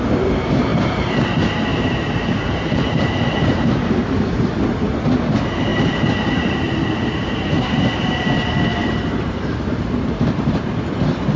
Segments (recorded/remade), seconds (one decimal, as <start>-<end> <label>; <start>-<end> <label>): 0.0-0.7 recorded; 0.7-1.2 remade; 1.2-1.7 recorded; 1.7-3.9 remade; 3.9-5.7 recorded; 5.7-10.7 remade; 10.7-11.4 recorded